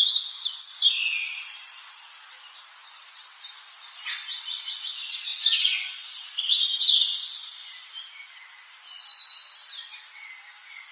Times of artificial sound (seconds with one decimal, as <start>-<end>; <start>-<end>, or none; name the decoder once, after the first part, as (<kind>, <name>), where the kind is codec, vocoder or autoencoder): 4.2-4.7 (vocoder, BigVGAN v2); 5.3-6.4